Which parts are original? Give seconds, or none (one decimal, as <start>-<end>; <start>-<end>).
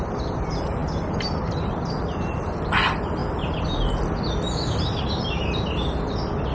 0.0-6.5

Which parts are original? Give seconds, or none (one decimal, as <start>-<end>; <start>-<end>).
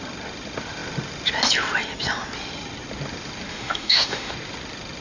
0.0-3.5; 4.3-5.0